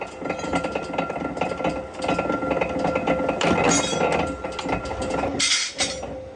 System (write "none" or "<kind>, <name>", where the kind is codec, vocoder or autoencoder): none